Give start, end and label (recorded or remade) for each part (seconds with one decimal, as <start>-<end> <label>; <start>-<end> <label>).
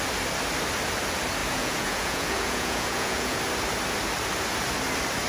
0.0-1.4 recorded; 1.4-3.4 remade; 3.4-5.3 recorded